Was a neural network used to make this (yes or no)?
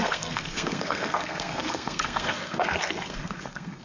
yes